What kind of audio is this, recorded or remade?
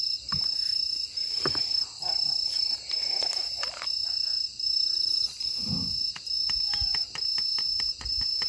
recorded